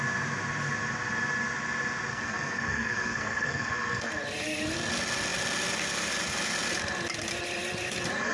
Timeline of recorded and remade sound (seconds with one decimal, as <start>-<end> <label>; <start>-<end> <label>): 0.0-2.1 recorded; 2.1-4.1 remade; 4.1-8.3 recorded